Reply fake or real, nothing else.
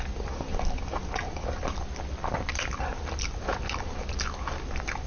real